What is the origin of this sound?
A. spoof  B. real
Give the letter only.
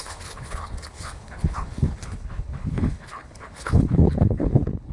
A